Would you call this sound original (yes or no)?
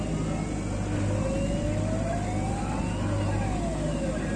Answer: yes